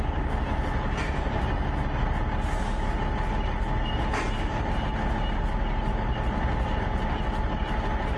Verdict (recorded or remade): recorded